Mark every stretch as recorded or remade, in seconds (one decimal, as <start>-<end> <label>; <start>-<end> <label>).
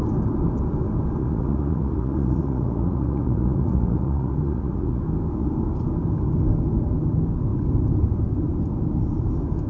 0.0-1.2 recorded; 1.2-5.0 remade; 5.0-9.7 recorded